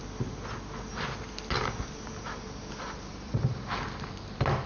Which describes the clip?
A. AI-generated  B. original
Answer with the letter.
B